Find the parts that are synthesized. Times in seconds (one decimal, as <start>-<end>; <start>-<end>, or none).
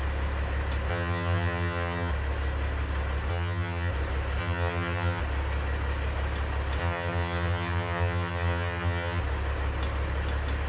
0.9-2.1; 3.3-3.9; 4.4-5.2; 6.8-9.2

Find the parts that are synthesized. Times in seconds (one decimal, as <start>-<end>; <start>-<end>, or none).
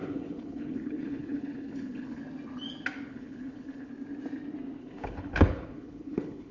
0.0-2.2; 3.1-3.9; 4.8-6.5